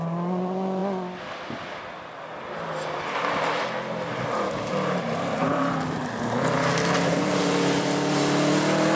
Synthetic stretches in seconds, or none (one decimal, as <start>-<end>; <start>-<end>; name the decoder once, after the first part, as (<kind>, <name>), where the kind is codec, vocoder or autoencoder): none